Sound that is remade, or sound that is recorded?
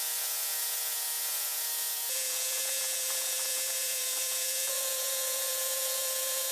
remade